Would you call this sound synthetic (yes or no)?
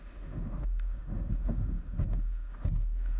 yes